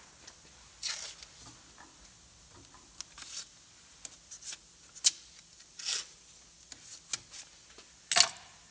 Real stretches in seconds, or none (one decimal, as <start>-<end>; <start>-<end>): 0.0-8.7